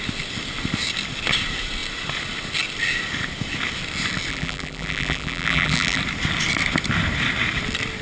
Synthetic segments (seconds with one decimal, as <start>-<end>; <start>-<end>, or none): 4.3-6.0